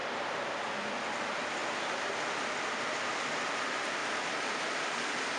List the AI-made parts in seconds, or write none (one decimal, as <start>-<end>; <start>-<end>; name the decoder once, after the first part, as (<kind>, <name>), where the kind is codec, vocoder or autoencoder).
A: 4.0-4.6 (vocoder, BigVGAN v2)